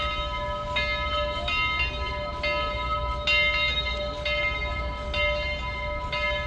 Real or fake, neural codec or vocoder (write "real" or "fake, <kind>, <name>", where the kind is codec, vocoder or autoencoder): real